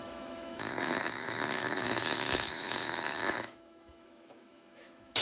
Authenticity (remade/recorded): remade